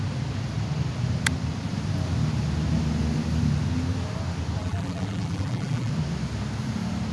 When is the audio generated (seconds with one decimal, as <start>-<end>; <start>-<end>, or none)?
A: 4.6-5.9